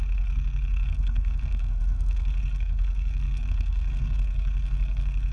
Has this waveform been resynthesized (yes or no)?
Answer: yes